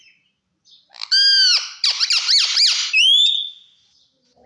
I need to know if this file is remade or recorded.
recorded